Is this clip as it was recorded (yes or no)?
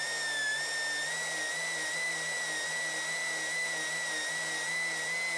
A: yes